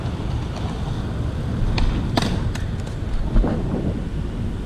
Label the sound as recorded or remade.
recorded